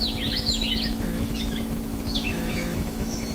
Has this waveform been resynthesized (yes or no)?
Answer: yes